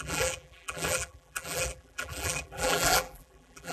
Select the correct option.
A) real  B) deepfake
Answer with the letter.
B